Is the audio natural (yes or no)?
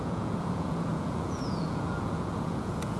no